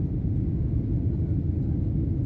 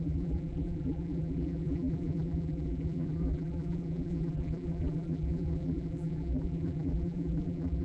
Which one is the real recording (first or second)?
first